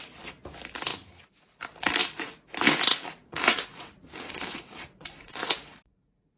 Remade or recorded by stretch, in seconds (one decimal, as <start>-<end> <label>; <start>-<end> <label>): 0.0-0.9 recorded; 0.9-1.6 remade; 1.6-2.9 recorded; 2.9-6.4 remade